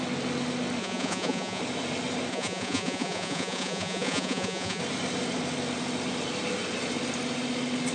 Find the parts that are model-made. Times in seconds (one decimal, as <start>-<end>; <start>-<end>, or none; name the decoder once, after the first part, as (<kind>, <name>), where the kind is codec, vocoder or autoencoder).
0.8-1.6 (vocoder, Vocos); 2.3-4.8